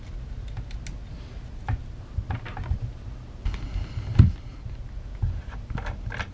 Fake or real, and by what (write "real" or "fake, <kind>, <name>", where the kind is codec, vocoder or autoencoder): real